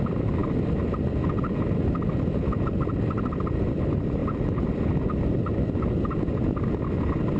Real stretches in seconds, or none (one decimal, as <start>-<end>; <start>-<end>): 0.0-7.4